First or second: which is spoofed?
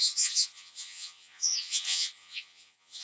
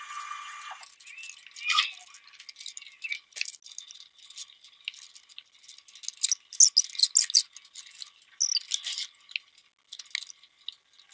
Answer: first